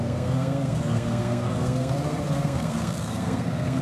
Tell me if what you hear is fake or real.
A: fake